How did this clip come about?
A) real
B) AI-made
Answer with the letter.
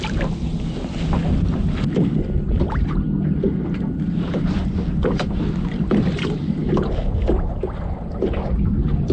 A